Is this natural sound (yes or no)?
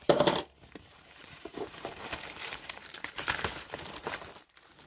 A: no